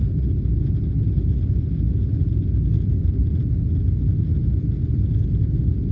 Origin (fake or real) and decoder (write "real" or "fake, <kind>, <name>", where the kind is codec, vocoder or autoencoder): real